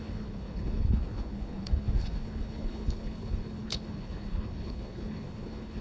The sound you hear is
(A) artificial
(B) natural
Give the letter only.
A